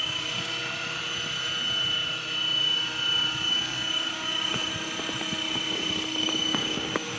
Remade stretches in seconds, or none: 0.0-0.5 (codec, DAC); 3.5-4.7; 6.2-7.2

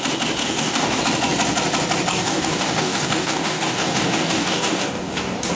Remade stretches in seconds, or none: 0.4-1.0 (codec, DAC); 2.1-5.5

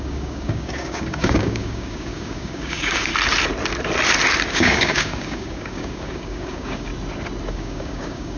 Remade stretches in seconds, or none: 0.0-3.1 (codec, DAC); 4.5-6.9; 7.5-8.4

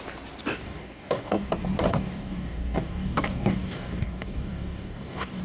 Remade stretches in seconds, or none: 0.5-1.5 (codec, DAC); 1.9-5.4

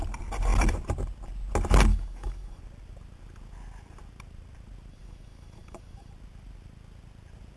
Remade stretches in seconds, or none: 1.9-2.6 (codec, DAC); 4.9-6.1

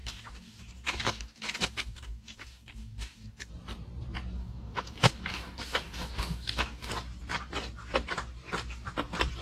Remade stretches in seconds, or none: 0.0-3.5 (codec, DAC); 4.4-6.9

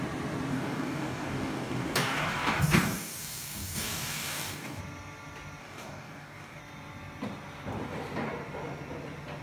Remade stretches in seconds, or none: 0.5-4.8 (codec, DAC); 5.6-6.6